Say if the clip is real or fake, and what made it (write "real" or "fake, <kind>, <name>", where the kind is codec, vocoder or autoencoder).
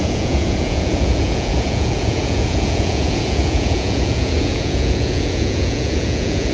fake, vocoder, Vocos